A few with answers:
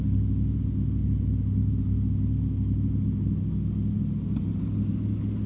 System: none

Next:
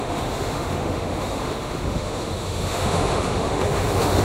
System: autoencoder, DAC-VAE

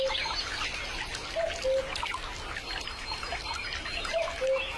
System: none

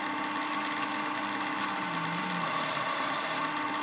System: none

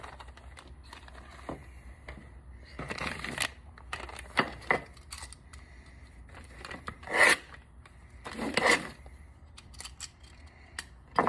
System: none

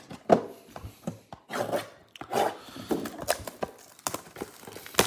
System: none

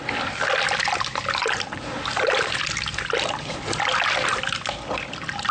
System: none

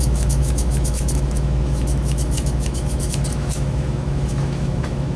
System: autoencoder, DAC-VAE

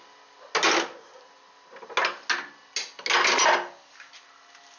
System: none